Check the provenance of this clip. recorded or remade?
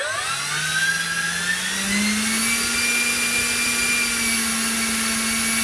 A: recorded